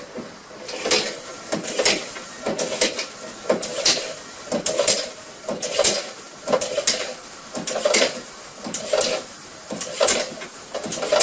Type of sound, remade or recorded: recorded